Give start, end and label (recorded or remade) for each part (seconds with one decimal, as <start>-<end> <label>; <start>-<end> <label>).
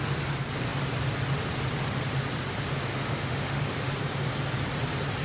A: 0.0-2.9 recorded; 2.9-3.6 remade; 3.6-5.2 recorded